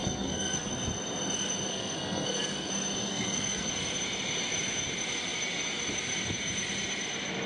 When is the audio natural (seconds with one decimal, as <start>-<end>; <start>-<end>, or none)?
0.7-1.7; 2.7-3.1; 3.7-7.5